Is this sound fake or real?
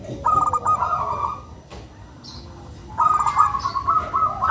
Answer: real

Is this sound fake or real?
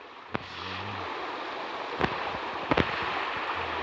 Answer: real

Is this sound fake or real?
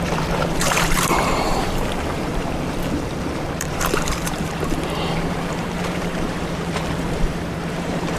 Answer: fake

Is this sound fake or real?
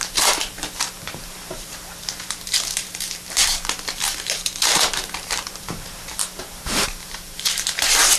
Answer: fake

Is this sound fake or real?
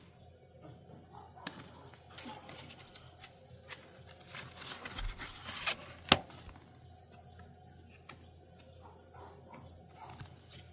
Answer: real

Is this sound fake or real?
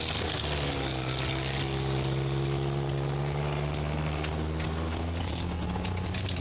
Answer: real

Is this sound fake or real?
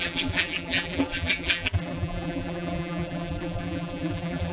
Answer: fake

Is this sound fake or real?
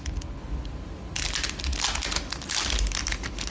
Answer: real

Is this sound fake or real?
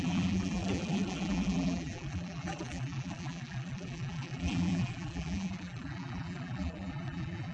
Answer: fake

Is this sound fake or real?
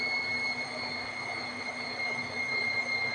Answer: real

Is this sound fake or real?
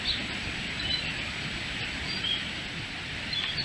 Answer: real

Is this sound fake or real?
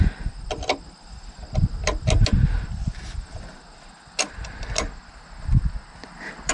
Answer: real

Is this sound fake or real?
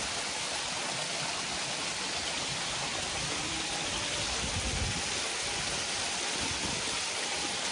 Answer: real